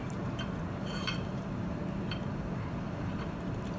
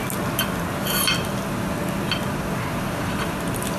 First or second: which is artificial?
first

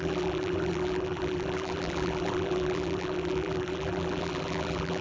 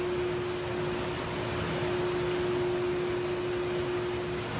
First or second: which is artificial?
first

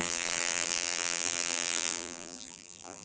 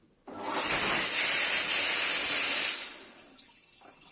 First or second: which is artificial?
first